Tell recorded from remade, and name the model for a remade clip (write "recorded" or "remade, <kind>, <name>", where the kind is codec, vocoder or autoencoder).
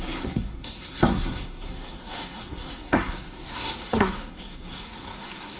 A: remade, codec, SNAC